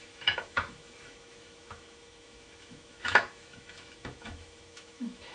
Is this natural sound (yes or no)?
no